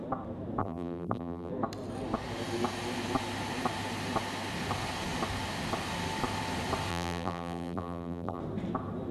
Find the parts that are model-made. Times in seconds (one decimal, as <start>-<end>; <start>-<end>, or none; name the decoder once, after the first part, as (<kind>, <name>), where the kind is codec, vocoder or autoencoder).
0.6-1.5 (vocoder, BigVGAN v2); 6.9-8.4